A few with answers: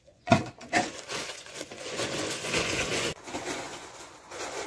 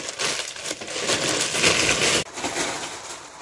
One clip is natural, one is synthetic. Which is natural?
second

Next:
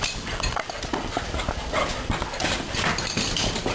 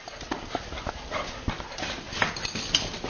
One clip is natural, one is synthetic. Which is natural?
second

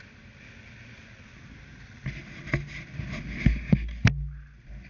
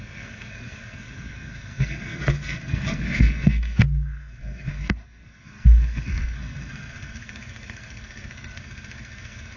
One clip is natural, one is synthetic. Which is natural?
first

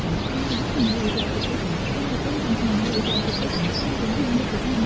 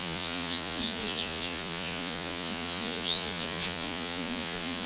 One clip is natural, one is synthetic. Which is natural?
first